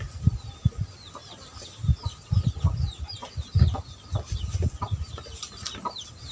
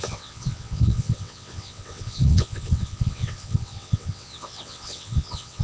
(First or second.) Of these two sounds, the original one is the first